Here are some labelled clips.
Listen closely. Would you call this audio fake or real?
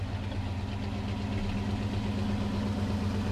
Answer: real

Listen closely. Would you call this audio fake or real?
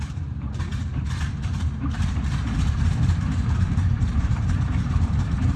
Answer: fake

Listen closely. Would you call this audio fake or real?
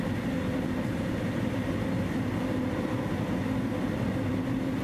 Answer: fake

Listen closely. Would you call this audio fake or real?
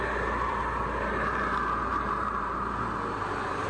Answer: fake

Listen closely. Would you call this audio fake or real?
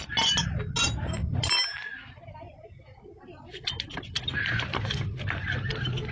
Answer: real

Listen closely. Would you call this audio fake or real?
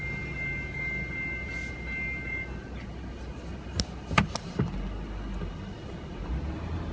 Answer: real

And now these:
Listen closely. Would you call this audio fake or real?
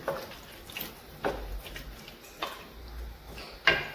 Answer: real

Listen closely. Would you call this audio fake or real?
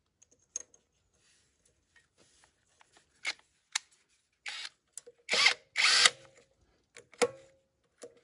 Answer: real